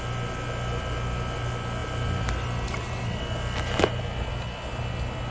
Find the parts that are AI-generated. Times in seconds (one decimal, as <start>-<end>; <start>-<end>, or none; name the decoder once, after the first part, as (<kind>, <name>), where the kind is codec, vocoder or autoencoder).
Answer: none